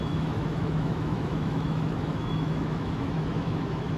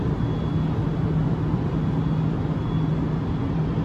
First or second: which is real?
second